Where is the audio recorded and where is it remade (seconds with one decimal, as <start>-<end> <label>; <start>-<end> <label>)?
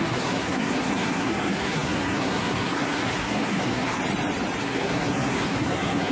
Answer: 0.0-4.0 remade; 4.0-4.6 recorded; 4.6-6.1 remade